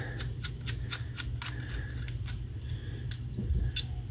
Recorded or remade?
recorded